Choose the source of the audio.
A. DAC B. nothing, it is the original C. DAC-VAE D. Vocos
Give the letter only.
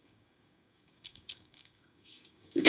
A